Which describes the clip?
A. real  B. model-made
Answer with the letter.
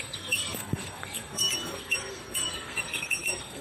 B